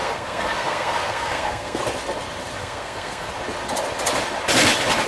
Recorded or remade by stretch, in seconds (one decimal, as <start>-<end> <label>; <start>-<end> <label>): 0.0-1.8 remade; 1.8-2.6 recorded; 2.6-3.3 remade; 3.3-5.1 recorded

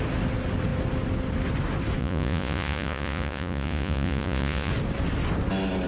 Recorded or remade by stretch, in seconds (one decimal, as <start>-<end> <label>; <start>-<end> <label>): 0.0-2.0 recorded; 2.0-4.7 remade; 4.7-5.9 recorded

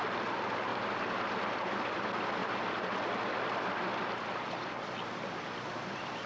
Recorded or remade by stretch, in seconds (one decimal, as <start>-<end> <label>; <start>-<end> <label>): 0.0-6.3 recorded

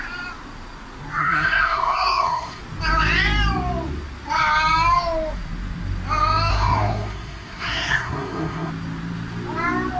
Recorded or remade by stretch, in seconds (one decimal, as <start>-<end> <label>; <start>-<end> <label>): 0.0-1.2 recorded; 1.2-2.6 remade; 2.6-6.5 recorded; 6.5-8.7 remade; 8.7-10.0 recorded

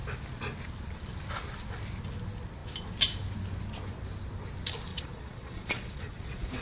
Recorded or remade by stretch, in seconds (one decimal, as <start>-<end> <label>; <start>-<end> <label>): 0.0-4.9 recorded; 4.9-6.6 remade